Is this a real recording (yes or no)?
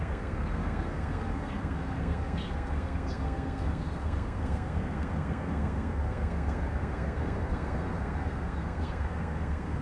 no